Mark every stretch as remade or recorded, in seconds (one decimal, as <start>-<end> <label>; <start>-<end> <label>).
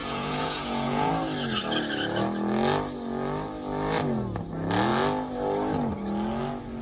0.0-1.1 remade; 1.1-6.8 recorded